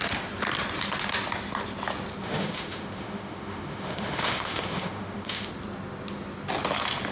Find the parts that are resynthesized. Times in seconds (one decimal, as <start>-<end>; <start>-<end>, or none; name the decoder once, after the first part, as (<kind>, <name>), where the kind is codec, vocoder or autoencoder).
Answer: 2.2-5.5 (autoencoder, DAC-VAE)